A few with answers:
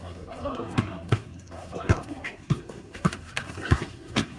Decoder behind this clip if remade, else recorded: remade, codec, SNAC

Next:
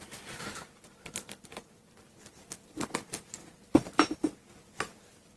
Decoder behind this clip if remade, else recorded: recorded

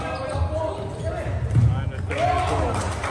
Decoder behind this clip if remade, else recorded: recorded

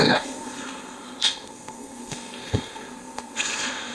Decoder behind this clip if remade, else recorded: remade, codec, SNAC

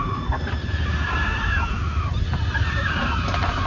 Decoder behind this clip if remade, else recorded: recorded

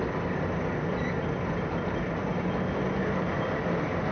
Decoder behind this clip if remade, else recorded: recorded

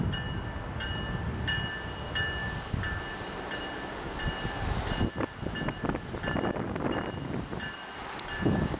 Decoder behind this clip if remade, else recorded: recorded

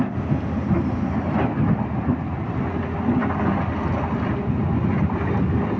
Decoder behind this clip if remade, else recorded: recorded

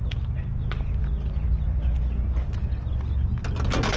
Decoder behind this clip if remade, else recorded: recorded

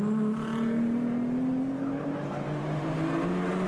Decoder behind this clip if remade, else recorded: recorded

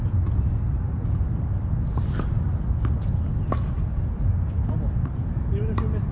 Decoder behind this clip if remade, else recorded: recorded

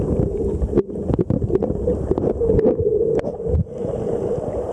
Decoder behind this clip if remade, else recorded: recorded